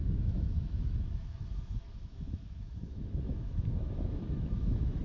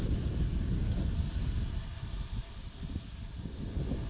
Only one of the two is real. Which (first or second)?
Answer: second